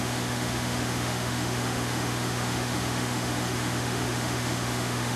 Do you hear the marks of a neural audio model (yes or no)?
yes